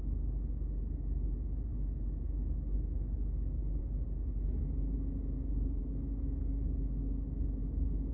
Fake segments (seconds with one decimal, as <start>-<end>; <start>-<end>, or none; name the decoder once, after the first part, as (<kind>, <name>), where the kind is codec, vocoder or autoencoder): 5.8-6.6 (autoencoder, DAC-VAE)